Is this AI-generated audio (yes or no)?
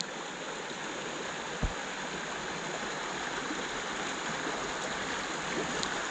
no